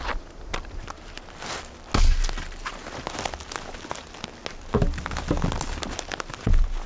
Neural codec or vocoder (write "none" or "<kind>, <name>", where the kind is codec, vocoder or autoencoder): none